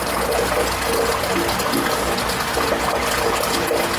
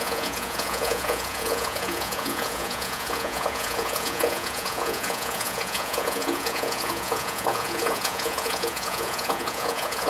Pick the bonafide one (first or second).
first